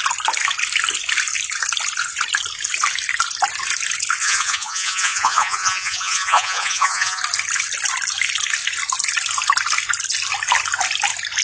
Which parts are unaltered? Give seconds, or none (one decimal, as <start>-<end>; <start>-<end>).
0.0-4.2; 7.2-11.4